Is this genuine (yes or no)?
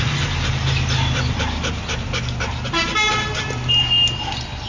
yes